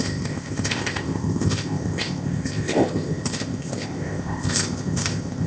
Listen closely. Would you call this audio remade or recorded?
remade